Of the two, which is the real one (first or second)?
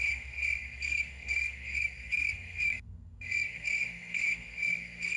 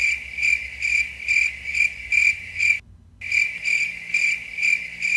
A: second